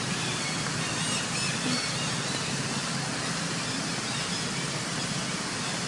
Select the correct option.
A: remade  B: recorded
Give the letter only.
B